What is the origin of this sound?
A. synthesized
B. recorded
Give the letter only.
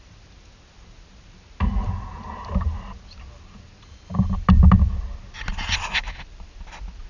B